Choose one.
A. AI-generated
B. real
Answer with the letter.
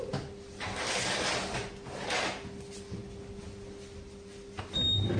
B